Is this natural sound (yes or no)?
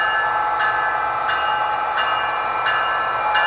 yes